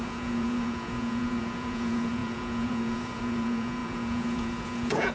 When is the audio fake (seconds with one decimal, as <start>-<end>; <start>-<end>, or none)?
0.0-5.1